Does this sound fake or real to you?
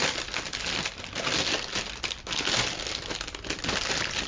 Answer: real